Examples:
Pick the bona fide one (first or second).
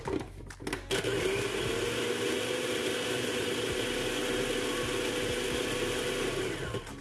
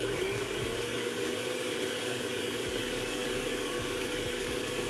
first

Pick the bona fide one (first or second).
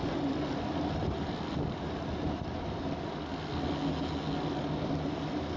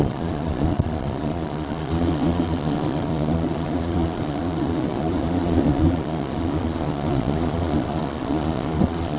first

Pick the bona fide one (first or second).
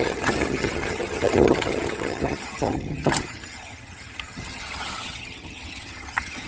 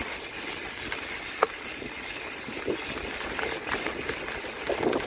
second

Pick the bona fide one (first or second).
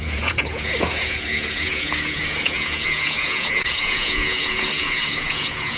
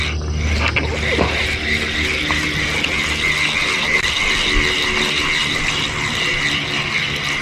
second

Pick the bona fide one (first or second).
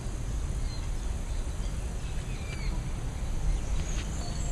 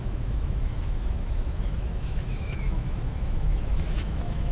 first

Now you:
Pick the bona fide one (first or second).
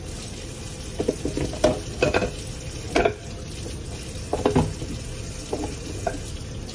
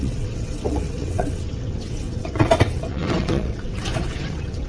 first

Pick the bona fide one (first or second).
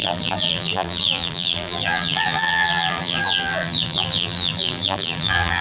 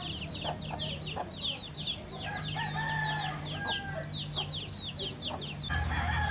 second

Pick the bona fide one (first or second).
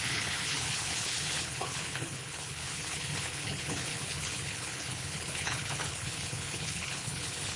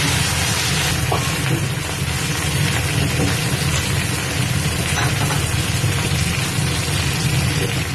second